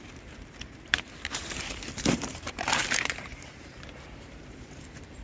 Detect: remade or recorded remade